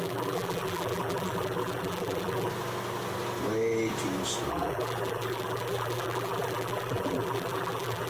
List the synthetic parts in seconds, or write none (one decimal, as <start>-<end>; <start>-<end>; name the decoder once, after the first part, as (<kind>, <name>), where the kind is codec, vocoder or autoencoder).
0.0-2.5 (vocoder, BigVGAN v2); 4.5-8.1